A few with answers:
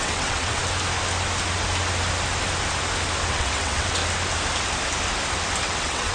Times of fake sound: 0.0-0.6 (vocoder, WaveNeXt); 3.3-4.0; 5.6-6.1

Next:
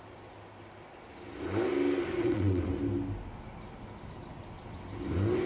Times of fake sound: 2.2-2.7 (vocoder, WaveNeXt)

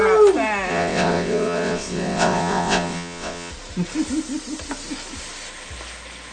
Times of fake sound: 0.7-3.5 (vocoder, WaveNeXt)

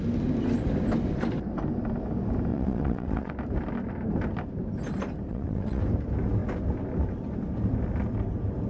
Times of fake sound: 2.5-3.3 (vocoder, WaveNeXt); 5.3-5.8

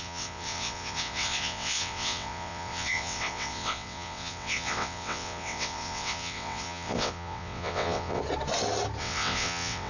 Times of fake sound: 0.0-8.2 (vocoder, WaveNeXt); 9.0-9.9

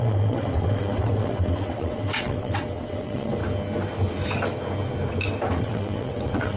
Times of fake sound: 0.0-3.4 (vocoder, WaveNeXt); 5.5-6.6